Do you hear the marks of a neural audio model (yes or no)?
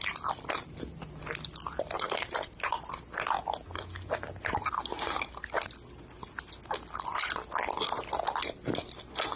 no